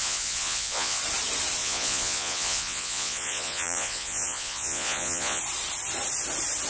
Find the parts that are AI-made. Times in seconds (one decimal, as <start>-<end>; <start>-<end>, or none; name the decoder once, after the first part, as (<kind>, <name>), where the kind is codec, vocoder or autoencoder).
0.0-1.0 (vocoder, Vocos); 1.6-5.4